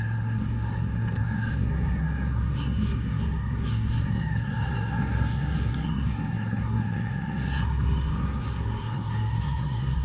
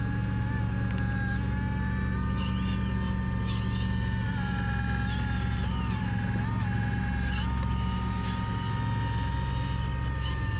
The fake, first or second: first